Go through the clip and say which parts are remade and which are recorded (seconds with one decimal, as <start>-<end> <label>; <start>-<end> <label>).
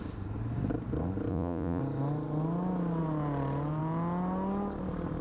0.0-1.3 recorded; 1.3-1.8 remade; 1.8-5.2 recorded